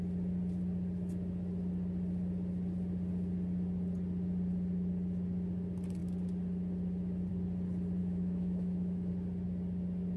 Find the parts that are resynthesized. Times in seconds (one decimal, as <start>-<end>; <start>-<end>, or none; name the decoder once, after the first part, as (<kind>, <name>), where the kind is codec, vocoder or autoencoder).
8.0-9.1 (autoencoder, DAC-VAE)